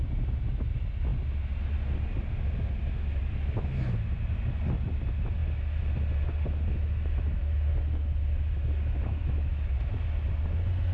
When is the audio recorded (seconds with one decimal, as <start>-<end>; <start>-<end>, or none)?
0.0-9.2; 9.9-10.9